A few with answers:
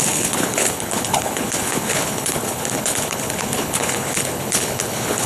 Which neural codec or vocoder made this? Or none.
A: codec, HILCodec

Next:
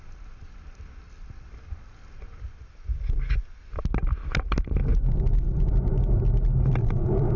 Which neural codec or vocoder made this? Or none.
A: none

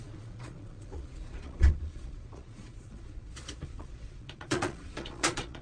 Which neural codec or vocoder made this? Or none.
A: vocoder, Vocos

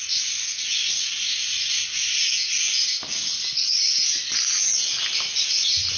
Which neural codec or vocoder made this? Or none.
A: none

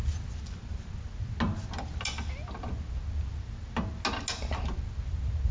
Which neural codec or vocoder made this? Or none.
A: none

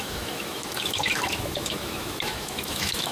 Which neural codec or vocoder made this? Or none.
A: autoencoder, DAC-VAE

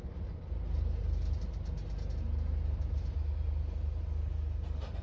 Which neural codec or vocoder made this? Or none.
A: none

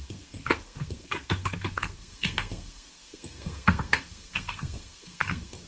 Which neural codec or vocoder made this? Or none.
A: codec, SNAC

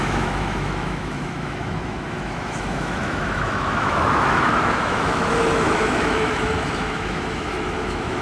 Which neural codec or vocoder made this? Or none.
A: autoencoder, DAC-VAE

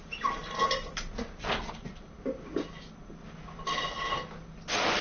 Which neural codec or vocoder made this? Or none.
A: none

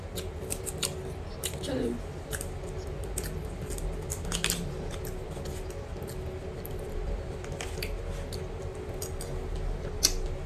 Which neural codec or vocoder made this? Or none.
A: none